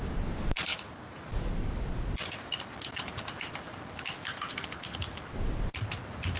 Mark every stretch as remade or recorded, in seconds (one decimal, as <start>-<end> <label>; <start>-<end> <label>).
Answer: 0.0-6.4 recorded